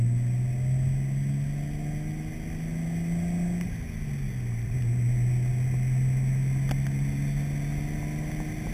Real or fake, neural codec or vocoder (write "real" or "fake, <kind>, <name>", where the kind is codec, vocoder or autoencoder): real